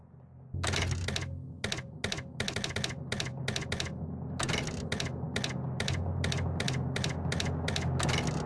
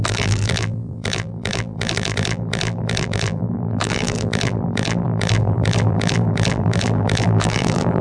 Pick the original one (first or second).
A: first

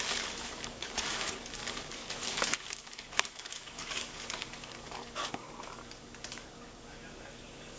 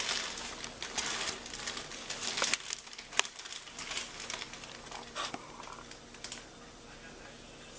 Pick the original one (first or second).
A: second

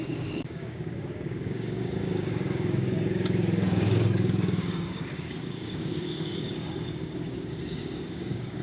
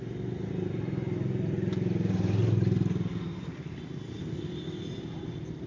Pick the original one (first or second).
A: second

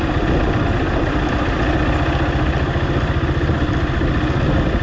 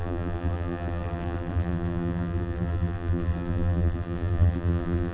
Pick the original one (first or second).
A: first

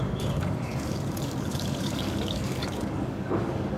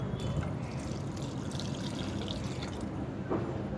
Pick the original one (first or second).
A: second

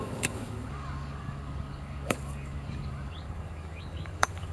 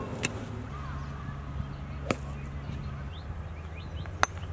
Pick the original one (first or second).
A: second